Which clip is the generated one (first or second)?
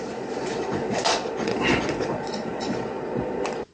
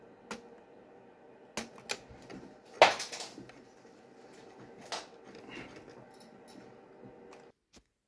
first